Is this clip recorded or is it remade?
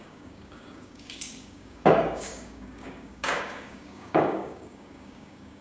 remade